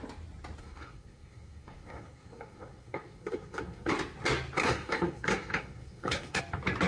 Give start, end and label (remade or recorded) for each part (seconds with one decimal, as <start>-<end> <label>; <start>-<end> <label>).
0.0-0.6 recorded; 0.6-3.9 remade; 3.9-4.6 recorded; 4.6-6.4 remade; 6.4-6.9 recorded